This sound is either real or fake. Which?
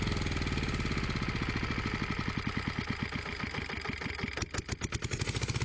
real